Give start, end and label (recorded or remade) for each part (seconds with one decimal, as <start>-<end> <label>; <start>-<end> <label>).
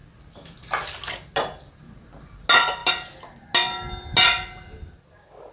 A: 0.0-5.5 recorded